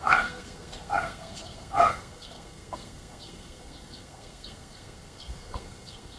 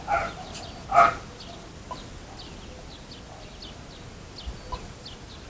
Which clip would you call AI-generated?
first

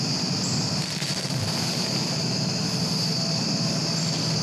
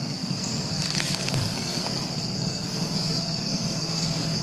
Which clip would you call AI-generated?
second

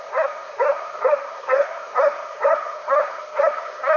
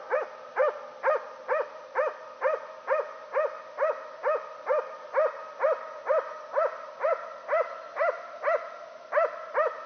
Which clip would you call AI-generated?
first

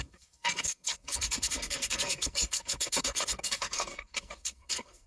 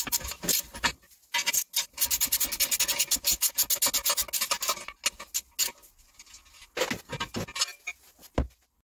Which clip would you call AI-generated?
first